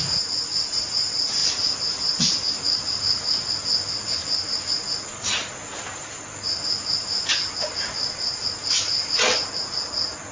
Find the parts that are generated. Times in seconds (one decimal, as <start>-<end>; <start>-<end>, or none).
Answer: none